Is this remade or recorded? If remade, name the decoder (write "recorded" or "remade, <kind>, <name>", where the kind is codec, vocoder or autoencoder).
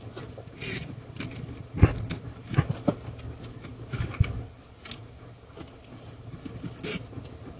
recorded